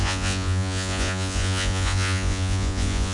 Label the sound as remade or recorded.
remade